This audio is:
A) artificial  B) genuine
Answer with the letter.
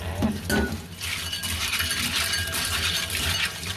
B